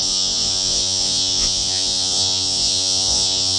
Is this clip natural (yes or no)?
no